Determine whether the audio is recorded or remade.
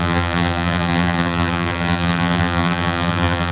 remade